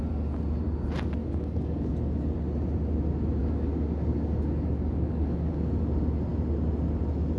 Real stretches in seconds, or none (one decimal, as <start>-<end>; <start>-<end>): 0.0-1.2; 1.9-3.4; 5.5-7.4